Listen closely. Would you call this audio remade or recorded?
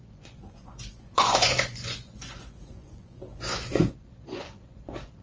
remade